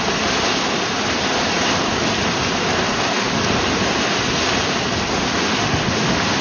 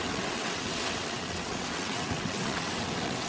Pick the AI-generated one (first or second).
second